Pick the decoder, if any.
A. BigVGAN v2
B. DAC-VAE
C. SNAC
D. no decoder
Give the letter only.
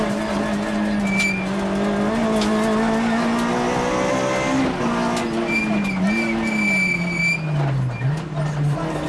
D